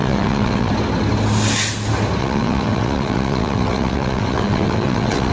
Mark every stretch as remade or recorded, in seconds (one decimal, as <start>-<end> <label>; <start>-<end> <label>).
0.0-0.7 remade; 0.7-2.2 recorded; 2.2-5.3 remade